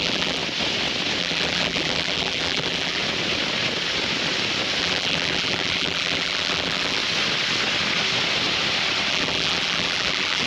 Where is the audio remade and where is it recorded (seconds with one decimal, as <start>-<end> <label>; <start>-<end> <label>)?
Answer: 0.0-0.4 remade; 0.4-1.2 recorded; 1.2-3.0 remade; 3.0-4.8 recorded; 4.8-7.0 remade; 7.0-9.1 recorded; 9.1-10.5 remade